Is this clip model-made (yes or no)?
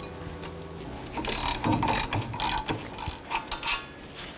no